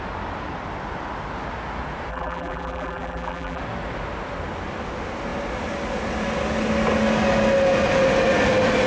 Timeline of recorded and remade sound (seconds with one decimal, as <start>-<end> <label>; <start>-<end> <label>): 0.0-2.1 recorded; 2.1-3.6 remade; 3.6-8.9 recorded